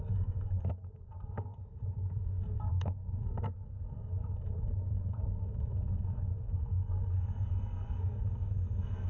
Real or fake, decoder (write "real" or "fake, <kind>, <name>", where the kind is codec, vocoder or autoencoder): fake, codec, SNAC